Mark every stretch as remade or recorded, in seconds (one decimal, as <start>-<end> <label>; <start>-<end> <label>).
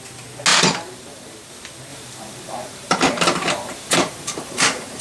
0.0-0.5 recorded; 0.5-1.5 remade; 1.5-1.9 recorded; 1.9-5.0 remade